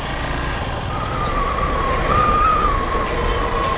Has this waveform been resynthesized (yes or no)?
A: no